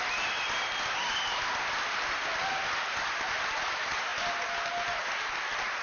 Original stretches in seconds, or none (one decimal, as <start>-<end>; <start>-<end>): 0.0-5.8